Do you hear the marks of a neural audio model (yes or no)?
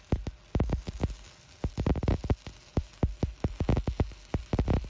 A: no